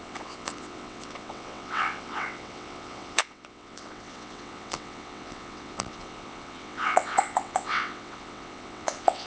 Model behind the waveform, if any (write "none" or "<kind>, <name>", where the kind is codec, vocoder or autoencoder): vocoder, WaveNeXt